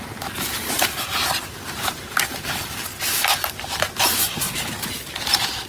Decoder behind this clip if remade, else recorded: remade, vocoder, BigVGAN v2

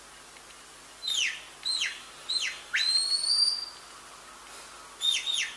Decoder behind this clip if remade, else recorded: recorded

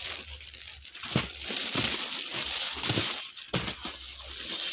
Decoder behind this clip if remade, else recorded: recorded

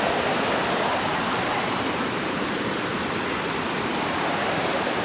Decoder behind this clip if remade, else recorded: remade, vocoder, BigVGAN v2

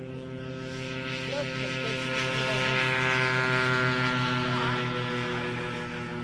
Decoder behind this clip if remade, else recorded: recorded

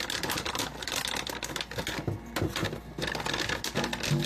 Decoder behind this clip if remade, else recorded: recorded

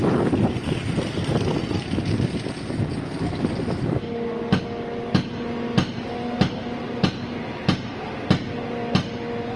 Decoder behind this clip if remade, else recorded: recorded